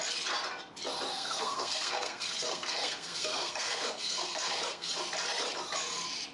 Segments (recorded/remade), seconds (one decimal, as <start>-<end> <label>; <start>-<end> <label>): 0.0-1.1 recorded; 1.1-4.9 remade; 4.9-6.3 recorded